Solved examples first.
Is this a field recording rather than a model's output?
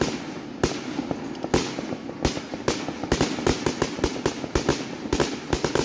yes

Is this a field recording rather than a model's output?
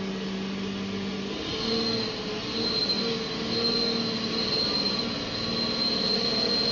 yes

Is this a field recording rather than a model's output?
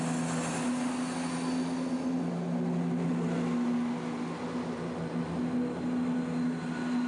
yes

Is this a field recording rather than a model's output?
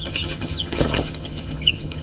no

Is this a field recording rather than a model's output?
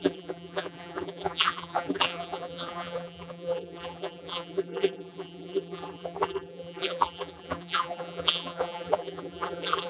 no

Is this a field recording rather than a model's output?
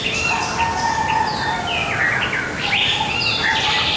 yes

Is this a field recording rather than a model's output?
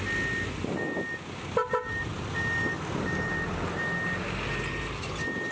yes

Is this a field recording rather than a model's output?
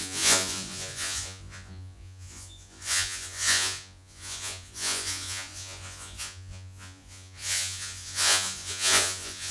no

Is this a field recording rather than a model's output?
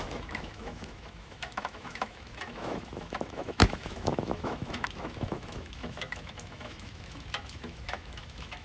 no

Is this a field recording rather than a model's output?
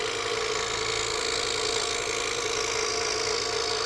yes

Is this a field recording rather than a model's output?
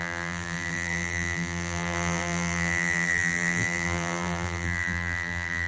no